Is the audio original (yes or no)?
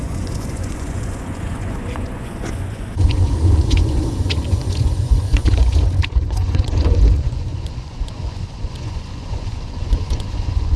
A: no